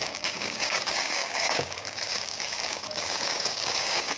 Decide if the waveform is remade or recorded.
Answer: remade